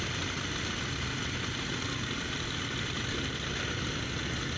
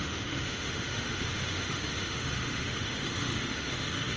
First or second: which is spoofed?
second